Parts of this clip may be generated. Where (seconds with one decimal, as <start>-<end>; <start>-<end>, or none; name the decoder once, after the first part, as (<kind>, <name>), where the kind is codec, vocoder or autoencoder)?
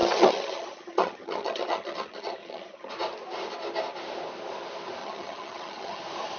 0.0-2.9 (vocoder, HiFi-GAN); 5.0-6.0